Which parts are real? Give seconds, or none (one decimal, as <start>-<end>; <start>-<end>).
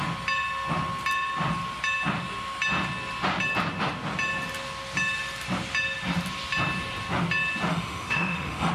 0.0-7.7